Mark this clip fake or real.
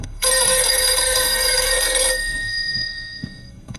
fake